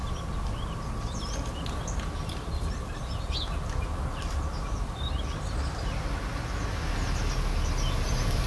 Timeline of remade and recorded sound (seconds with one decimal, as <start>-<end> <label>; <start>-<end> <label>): 0.0-8.5 recorded